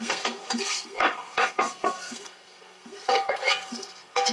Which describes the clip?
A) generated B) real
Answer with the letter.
A